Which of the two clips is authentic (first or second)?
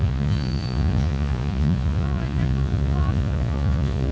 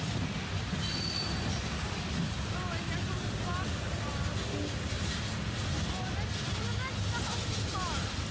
second